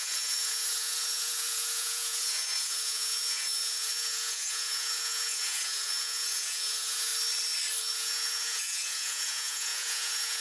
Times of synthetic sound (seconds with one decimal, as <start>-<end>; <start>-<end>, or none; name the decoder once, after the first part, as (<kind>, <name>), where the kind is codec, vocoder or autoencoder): 0.0-7.1 (vocoder, Vocos); 7.8-10.4

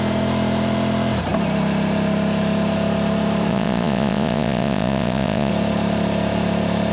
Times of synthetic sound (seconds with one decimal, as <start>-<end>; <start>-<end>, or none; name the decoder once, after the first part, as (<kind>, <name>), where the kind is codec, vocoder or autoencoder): 3.5-5.5 (vocoder, Vocos)

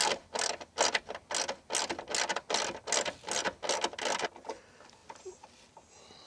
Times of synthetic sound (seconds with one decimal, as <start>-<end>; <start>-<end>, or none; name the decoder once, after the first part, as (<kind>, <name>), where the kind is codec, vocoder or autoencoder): none

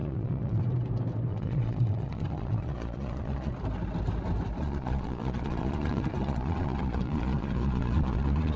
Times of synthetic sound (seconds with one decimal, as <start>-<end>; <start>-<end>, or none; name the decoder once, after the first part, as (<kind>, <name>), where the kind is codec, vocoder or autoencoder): 0.0-0.6 (vocoder, Vocos); 1.3-3.5; 4.6-8.6

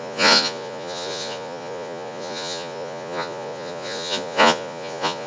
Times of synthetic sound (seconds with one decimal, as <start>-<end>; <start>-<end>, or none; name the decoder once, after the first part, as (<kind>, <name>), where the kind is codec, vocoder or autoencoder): 0.0-5.3 (vocoder, Vocos)

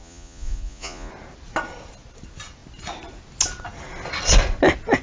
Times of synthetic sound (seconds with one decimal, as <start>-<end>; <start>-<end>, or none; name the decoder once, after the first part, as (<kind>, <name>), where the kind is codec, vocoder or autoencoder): 0.0-1.1 (vocoder, Vocos)

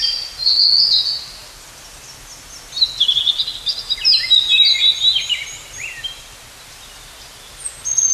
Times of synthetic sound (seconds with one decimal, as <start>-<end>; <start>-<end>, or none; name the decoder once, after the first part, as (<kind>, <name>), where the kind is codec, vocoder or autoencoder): none

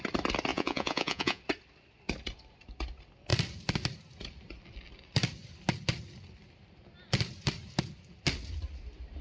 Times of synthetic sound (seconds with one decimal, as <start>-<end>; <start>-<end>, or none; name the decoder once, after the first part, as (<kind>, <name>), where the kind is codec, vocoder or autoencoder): 0.5-1.4 (vocoder, Vocos)